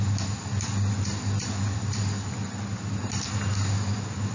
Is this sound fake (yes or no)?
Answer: no